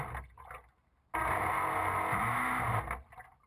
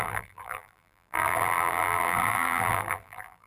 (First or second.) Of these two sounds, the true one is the first